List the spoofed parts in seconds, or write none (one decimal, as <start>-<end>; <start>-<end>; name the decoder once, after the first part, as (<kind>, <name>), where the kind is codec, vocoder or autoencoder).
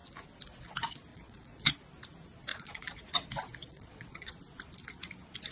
1.1-1.7 (vocoder, Vocos); 2.5-3.0; 3.6-4.3